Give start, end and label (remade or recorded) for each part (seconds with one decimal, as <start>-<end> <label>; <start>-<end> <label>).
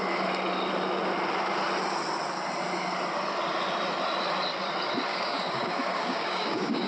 0.0-5.1 recorded; 5.1-6.9 remade